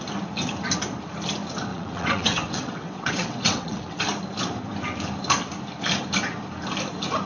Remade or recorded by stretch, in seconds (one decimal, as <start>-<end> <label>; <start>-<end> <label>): 0.0-1.7 recorded; 1.7-4.0 remade; 4.0-7.3 recorded